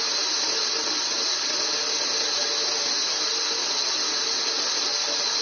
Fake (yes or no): no